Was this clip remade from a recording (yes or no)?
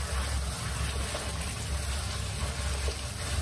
no